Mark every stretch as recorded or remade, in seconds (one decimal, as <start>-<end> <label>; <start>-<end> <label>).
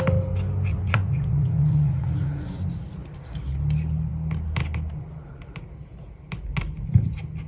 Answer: 0.0-0.7 recorded; 0.7-2.6 remade; 2.6-7.5 recorded